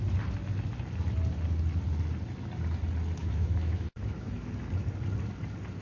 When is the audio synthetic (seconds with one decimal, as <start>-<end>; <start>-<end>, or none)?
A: 3.2-4.5